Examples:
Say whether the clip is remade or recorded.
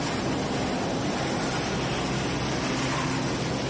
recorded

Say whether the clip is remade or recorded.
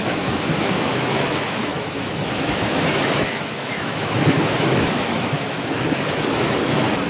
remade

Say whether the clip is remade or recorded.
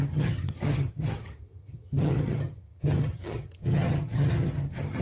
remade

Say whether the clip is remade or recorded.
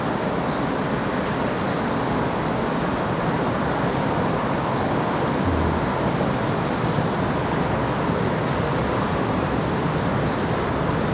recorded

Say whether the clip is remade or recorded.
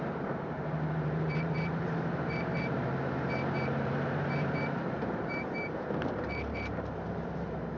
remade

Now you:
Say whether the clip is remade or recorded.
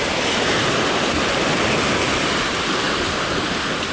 recorded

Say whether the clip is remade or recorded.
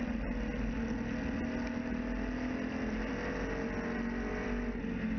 recorded